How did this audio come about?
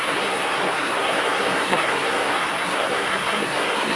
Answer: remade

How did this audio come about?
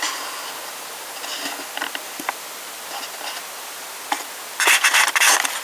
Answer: recorded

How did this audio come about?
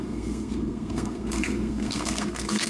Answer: remade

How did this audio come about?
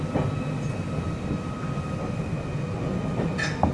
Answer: recorded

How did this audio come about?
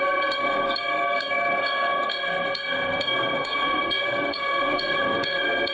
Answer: remade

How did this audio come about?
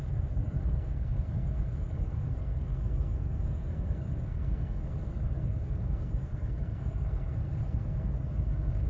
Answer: remade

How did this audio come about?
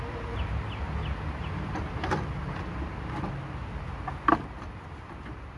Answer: recorded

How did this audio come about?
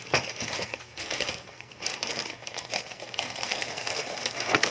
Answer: remade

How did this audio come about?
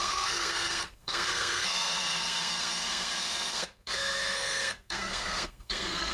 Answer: remade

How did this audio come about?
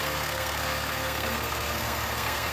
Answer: remade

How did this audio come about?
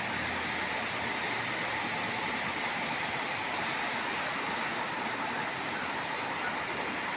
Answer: recorded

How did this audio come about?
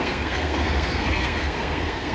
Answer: remade